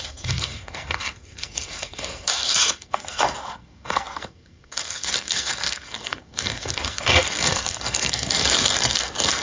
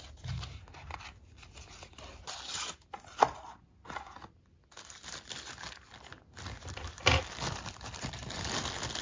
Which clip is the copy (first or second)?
first